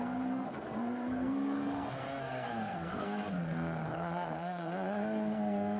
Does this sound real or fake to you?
fake